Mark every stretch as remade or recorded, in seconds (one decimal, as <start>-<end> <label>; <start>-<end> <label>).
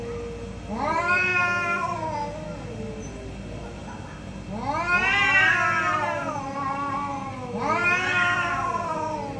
0.0-1.3 remade; 1.3-2.7 recorded; 2.7-3.8 remade; 3.8-6.3 recorded; 6.3-7.8 remade; 7.8-9.4 recorded